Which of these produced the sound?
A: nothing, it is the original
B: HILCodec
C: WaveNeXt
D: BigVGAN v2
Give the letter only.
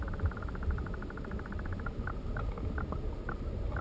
A